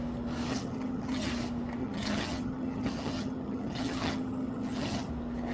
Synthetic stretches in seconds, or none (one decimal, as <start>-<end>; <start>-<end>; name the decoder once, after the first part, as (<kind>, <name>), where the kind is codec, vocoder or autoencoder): 0.5-1.3 (vocoder, HiFi-GAN); 1.8-5.1